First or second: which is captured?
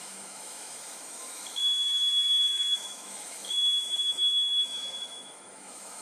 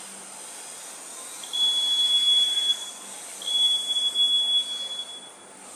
second